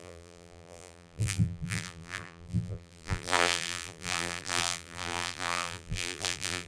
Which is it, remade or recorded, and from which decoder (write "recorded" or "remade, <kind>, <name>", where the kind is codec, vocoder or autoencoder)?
remade, vocoder, BigVGAN v2